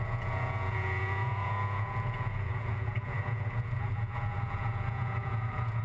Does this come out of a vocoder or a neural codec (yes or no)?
yes